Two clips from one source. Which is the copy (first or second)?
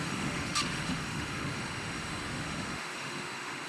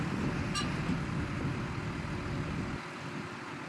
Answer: first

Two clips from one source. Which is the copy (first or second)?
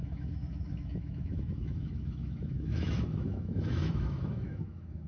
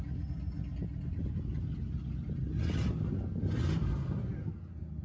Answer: first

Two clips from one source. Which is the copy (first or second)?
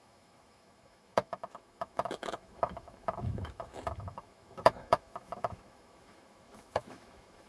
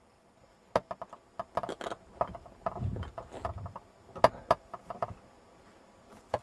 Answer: first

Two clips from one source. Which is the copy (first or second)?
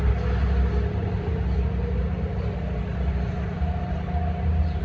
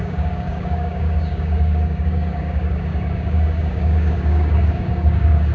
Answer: second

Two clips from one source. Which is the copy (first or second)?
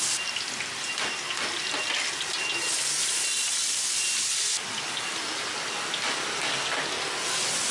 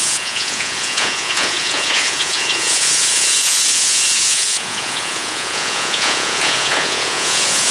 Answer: second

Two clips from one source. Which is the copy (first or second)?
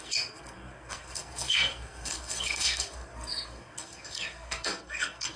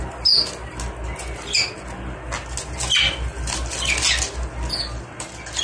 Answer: first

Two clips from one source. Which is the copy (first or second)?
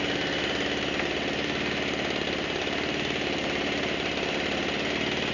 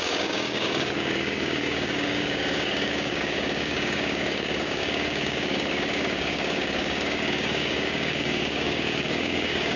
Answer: second